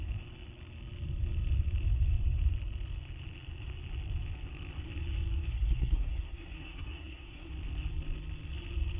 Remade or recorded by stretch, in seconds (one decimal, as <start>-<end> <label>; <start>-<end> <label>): 0.0-5.5 recorded; 5.5-7.5 remade; 7.5-9.0 recorded